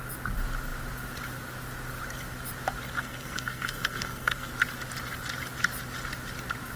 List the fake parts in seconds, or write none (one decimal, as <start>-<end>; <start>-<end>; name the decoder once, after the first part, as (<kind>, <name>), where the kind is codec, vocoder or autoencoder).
3.0-4.5 (codec, SNAC)